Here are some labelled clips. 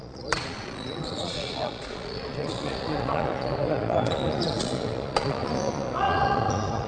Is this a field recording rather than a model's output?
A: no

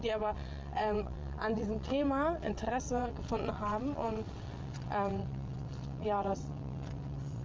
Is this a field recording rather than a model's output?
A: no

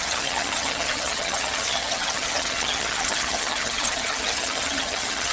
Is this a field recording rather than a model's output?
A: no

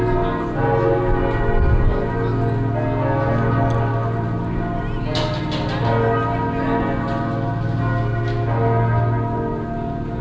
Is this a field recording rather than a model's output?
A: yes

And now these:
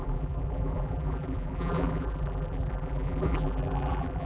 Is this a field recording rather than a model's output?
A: no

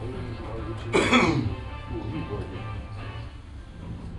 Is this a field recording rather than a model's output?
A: yes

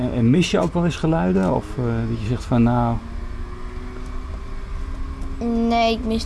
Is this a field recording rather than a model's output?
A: yes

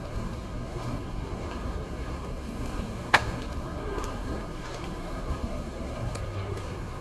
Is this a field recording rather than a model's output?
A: no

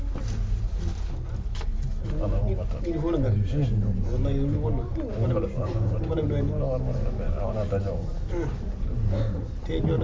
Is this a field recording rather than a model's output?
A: yes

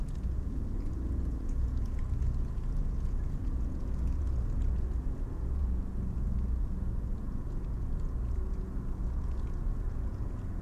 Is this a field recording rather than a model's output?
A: no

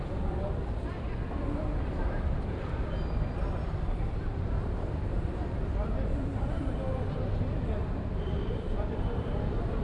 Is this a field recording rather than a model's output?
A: no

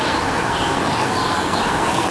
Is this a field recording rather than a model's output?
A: no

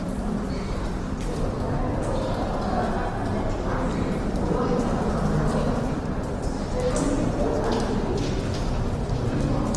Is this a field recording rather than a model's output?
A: yes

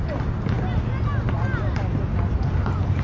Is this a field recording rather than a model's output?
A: yes